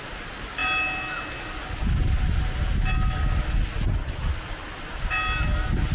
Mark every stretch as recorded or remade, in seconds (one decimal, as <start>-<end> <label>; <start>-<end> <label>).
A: 0.0-5.9 recorded